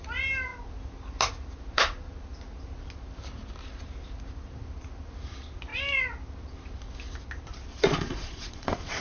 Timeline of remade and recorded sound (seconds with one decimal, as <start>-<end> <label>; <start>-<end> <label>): 0.0-7.7 recorded; 7.7-9.0 remade